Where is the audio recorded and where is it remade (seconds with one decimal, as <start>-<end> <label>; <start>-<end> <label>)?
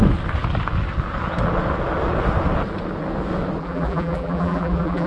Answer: 0.0-3.6 recorded; 3.6-5.1 remade